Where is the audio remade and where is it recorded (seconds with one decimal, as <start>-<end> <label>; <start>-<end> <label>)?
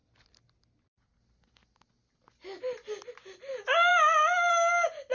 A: 0.0-5.1 recorded